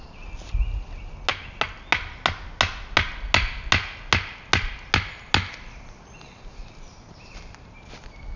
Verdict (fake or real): real